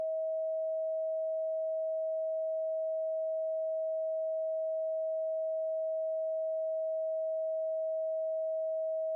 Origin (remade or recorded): recorded